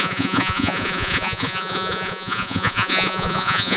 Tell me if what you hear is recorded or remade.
remade